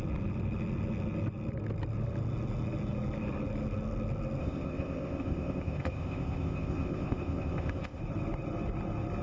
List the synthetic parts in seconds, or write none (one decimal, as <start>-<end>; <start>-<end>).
4.4-8.0